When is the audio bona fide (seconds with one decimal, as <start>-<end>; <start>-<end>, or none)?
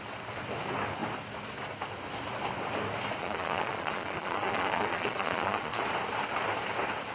0.0-3.2; 5.8-7.1